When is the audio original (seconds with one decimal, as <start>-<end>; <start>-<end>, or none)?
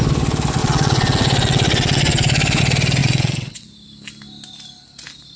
0.0-0.6; 2.6-3.0; 3.7-5.4